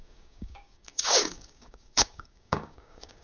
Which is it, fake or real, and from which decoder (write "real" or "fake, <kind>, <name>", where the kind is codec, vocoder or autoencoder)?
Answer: fake, codec, DAC